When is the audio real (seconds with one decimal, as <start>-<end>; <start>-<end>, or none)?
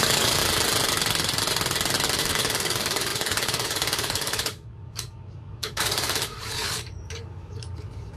0.4-2.2